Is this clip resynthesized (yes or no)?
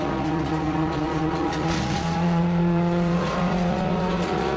yes